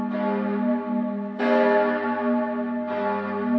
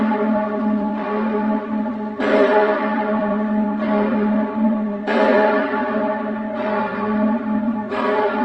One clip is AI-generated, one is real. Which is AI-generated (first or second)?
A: second